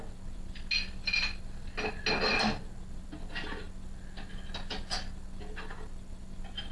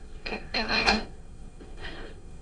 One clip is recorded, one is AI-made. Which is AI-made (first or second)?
second